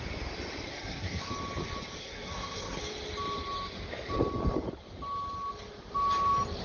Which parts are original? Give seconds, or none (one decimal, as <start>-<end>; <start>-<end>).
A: 0.0-0.7; 1.3-2.0; 2.8-6.6